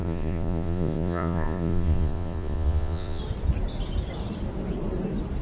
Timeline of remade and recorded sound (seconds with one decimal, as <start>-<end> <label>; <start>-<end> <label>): 0.0-3.2 remade; 3.2-5.4 recorded